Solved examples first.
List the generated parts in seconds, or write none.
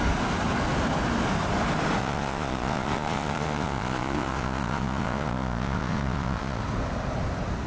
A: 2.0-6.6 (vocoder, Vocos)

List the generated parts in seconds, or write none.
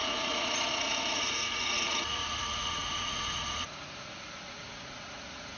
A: 0.0-5.6 (vocoder, Vocos)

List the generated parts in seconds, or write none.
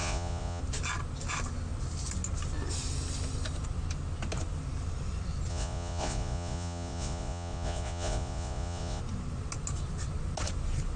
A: 0.0-0.6 (vocoder, Vocos); 5.5-9.0